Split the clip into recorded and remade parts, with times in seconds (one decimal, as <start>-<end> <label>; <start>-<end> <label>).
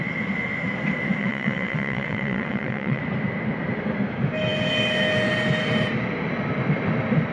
0.0-1.2 recorded; 1.2-3.0 remade; 3.0-7.3 recorded